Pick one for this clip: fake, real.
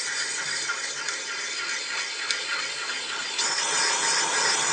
real